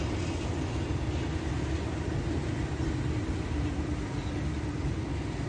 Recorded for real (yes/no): yes